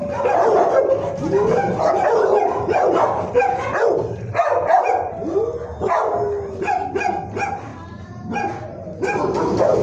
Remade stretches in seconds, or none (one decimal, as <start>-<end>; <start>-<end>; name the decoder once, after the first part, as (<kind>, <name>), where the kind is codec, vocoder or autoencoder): none